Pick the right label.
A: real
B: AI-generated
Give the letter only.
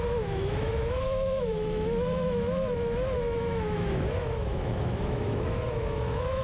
B